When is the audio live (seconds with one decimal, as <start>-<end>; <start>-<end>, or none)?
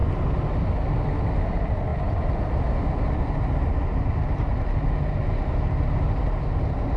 0.0-1.9; 3.5-7.0